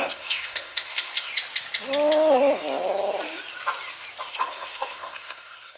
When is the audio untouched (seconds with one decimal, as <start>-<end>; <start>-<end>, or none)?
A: 1.3-4.3